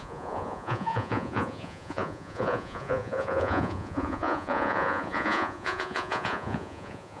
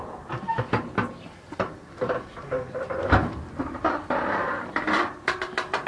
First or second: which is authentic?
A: second